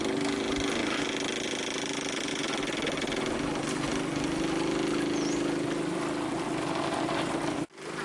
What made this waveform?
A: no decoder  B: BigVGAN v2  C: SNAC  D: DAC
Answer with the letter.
A